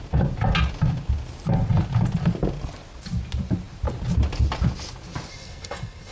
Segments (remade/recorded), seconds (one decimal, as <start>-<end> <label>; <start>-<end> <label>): 0.0-5.3 recorded; 5.3-6.1 remade